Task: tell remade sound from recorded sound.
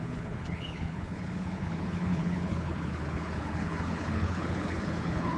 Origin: remade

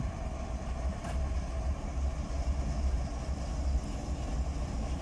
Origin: recorded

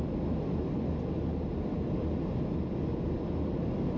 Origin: recorded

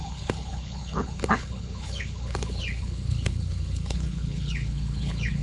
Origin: remade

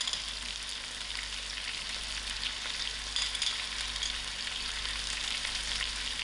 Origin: recorded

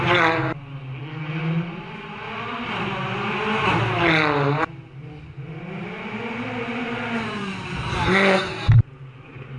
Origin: recorded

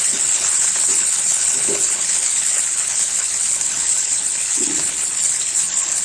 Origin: remade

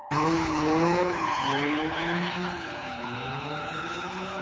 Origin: remade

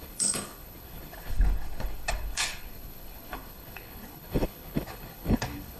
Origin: remade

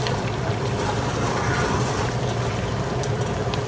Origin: recorded